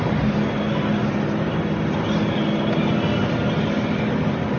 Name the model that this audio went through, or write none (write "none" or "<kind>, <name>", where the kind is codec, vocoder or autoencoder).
none